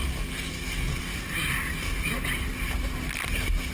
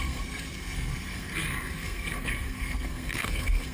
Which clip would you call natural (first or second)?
first